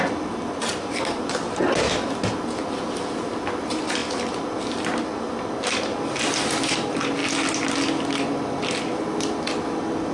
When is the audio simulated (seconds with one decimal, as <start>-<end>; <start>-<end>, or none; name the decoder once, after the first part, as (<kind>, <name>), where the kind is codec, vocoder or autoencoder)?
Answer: none